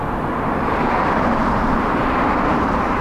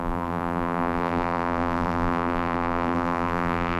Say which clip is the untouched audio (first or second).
first